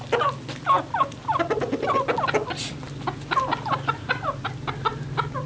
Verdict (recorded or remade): recorded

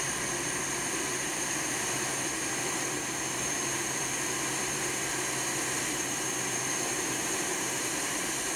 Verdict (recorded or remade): remade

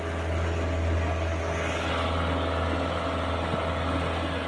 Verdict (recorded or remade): recorded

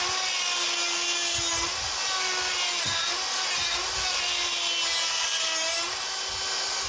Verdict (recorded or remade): recorded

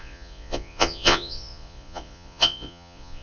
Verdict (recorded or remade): remade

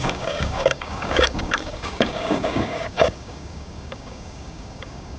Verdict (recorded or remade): remade